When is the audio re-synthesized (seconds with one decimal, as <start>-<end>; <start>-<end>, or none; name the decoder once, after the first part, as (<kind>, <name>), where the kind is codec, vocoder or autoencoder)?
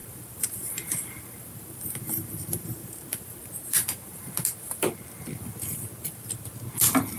0.0-4.3 (vocoder, BigVGAN v2)